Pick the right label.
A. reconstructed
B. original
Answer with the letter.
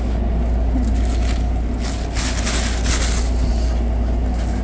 B